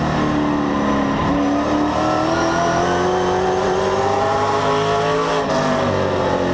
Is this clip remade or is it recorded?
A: recorded